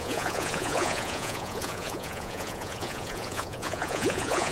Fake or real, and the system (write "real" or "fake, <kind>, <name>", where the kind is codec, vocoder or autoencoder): fake, vocoder, Vocos